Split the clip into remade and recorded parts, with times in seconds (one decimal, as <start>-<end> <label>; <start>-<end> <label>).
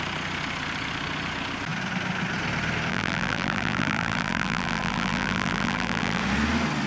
0.0-2.9 recorded; 2.9-6.2 remade; 6.2-6.9 recorded